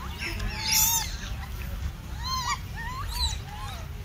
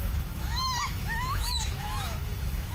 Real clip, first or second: first